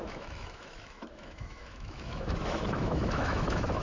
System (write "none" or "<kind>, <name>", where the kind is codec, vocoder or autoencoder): autoencoder, DAC-VAE